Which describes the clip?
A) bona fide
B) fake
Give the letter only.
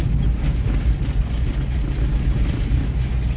A